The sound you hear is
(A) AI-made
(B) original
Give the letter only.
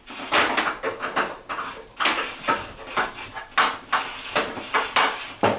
B